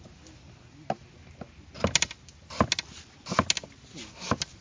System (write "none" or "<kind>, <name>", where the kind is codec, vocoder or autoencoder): none